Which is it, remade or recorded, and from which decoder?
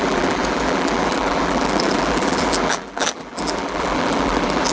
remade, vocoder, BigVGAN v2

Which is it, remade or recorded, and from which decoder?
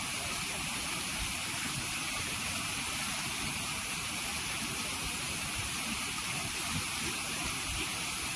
remade, vocoder, BigVGAN v2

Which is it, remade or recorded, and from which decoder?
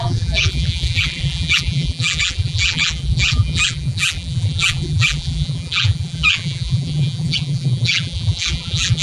remade, vocoder, BigVGAN v2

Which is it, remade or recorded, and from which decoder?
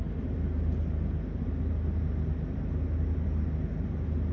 recorded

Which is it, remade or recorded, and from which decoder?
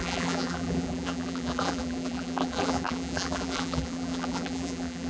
remade, vocoder, BigVGAN v2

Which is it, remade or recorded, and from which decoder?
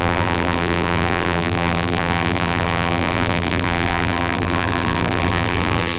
remade, vocoder, BigVGAN v2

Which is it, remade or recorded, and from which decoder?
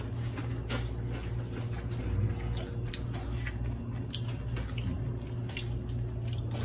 recorded